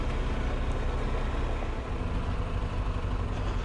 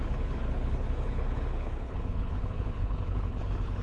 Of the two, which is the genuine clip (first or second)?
first